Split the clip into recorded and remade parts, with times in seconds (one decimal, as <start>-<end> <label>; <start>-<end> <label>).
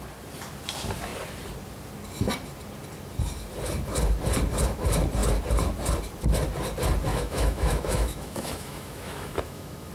0.0-7.1 recorded; 7.1-9.9 remade